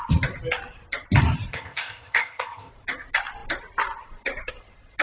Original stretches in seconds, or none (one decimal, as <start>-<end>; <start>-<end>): 0.0-1.5; 2.7-5.0